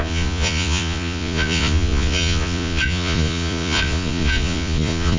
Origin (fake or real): fake